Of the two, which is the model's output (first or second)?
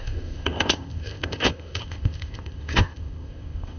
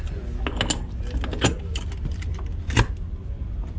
first